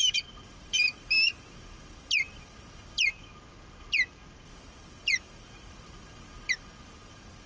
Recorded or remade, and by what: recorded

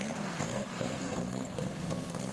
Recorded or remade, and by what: remade, codec, SNAC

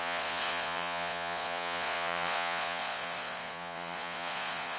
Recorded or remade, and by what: remade, vocoder, Vocos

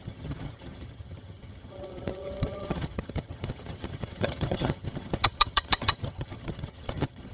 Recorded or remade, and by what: remade, vocoder, HiFi-GAN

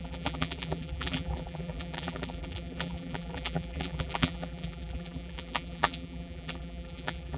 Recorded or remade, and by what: remade, vocoder, BigVGAN v2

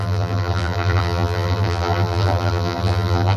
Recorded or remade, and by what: remade, vocoder, BigVGAN v2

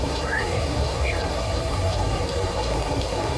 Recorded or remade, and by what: remade, codec, SNAC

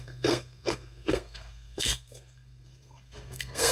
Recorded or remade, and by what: remade, codec, SNAC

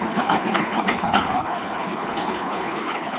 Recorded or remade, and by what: remade, codec, HILCodec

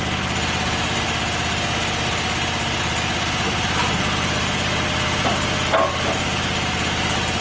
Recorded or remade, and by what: recorded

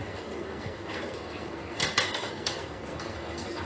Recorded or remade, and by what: remade, codec, SNAC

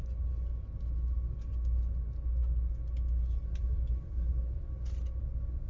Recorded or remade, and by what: recorded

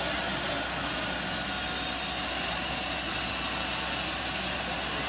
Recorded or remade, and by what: recorded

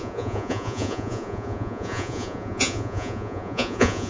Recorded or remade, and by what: remade, vocoder, Vocos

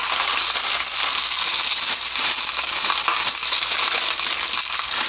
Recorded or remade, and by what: recorded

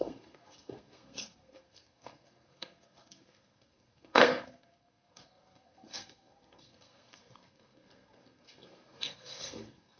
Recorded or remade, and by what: remade, codec, SNAC